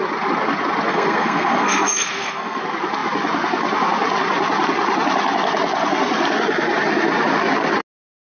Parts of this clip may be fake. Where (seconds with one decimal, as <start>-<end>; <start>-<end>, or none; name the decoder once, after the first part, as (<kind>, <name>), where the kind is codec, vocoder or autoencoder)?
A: 0.9-2.6 (codec, SNAC)